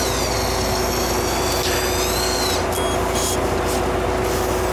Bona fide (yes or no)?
yes